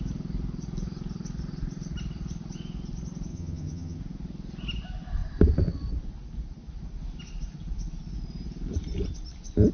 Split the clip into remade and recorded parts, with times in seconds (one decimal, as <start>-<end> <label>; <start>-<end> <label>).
0.0-3.3 recorded; 3.3-4.0 remade; 4.0-9.7 recorded

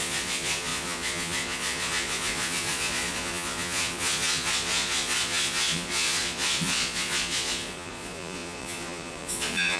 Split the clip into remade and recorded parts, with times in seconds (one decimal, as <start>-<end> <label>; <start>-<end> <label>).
0.0-9.8 remade